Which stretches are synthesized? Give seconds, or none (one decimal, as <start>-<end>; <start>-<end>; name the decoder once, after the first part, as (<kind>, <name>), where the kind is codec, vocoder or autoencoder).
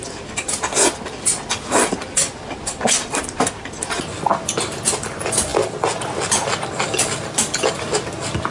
none